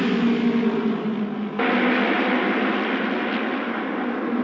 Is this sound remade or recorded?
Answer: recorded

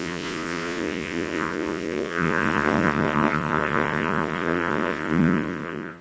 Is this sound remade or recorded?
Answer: remade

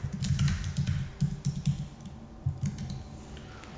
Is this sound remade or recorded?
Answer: recorded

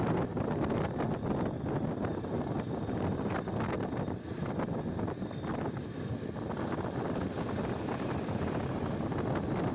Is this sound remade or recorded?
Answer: recorded